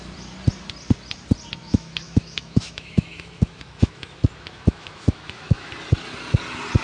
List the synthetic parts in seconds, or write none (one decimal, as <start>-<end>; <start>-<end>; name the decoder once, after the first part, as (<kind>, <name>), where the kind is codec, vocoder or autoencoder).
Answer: 1.6-5.7 (autoencoder, DAC-VAE)